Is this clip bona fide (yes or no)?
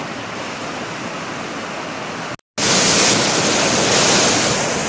yes